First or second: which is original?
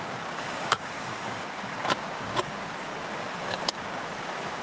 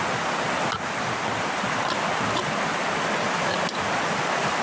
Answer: second